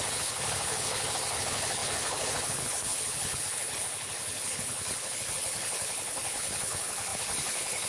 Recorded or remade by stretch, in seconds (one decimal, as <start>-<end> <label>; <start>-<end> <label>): 0.0-7.9 remade